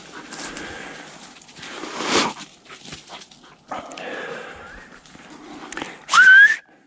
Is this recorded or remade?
recorded